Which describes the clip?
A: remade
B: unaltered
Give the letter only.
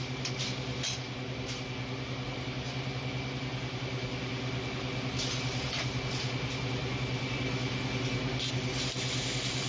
B